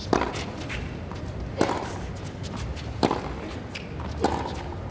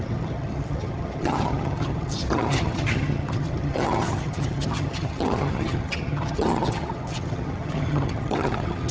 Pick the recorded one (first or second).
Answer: first